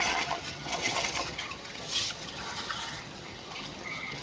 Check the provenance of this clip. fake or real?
fake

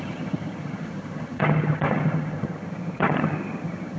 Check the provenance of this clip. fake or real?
fake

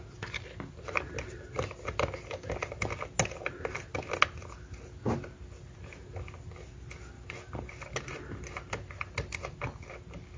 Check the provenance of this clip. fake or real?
real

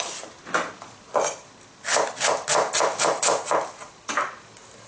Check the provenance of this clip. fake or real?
real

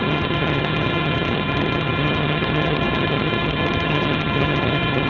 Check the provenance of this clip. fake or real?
fake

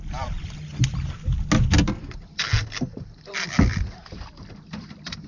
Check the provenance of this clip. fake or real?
real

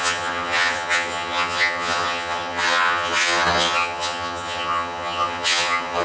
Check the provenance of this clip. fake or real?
fake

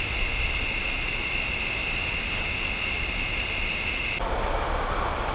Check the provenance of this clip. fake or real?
real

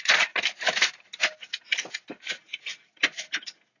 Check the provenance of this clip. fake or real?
real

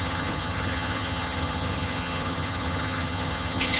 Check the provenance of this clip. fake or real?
fake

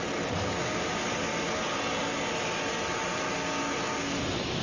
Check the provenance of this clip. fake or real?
real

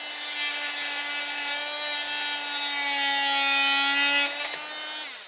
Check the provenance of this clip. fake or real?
real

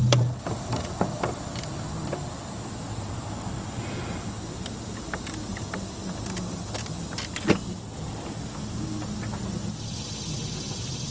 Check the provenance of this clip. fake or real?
real